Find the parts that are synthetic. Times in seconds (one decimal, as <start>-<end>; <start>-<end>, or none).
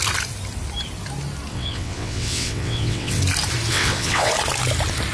1.5-3.2; 3.7-4.3